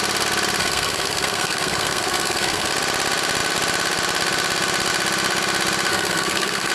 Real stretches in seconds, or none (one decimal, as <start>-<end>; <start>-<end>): 0.0-0.6; 2.7-5.9